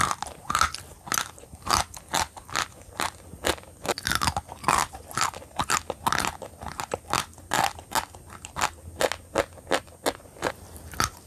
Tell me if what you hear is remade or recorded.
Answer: recorded